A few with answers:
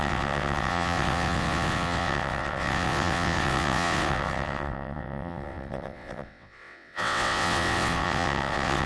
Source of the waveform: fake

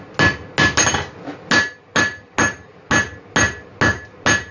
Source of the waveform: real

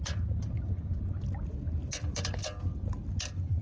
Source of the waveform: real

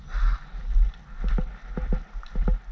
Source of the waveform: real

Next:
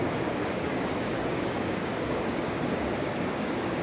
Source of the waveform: fake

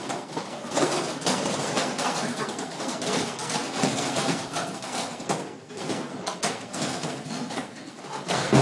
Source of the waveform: fake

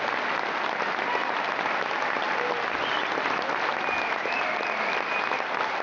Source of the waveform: real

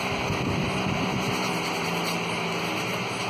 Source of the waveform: real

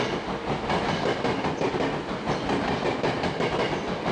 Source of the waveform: real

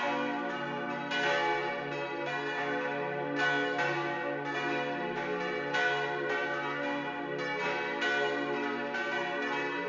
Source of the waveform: real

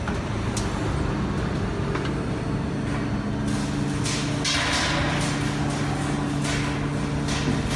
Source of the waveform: real